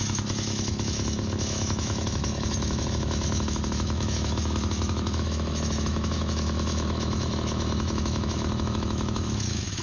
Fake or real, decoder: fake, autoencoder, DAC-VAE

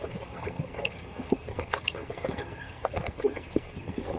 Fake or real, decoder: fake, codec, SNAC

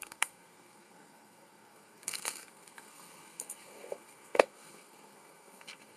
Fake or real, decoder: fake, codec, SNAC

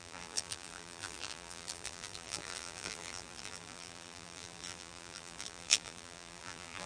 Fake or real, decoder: fake, vocoder, BigVGAN v2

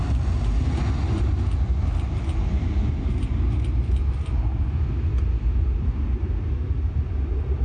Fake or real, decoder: real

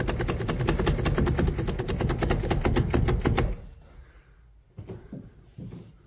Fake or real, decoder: real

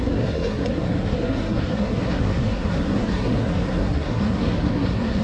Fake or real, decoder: fake, codec, SNAC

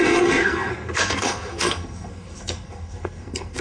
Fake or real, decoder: fake, codec, SNAC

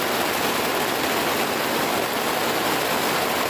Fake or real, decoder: real